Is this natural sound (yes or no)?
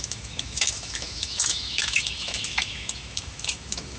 no